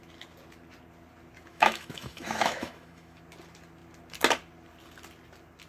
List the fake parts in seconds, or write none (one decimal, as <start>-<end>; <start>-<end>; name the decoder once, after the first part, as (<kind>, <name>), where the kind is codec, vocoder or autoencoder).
1.5-3.2 (autoencoder, DAC-VAE)